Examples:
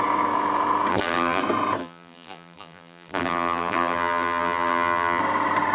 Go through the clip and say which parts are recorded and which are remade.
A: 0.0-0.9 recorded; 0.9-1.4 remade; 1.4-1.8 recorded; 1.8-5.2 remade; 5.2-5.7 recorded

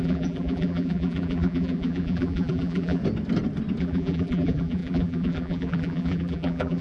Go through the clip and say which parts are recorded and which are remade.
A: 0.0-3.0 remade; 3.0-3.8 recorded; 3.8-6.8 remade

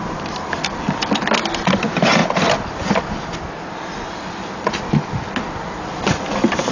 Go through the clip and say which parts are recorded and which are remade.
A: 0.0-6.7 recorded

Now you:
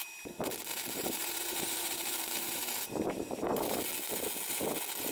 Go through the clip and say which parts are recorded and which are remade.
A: 0.0-0.7 recorded; 0.7-3.8 remade; 3.8-5.1 recorded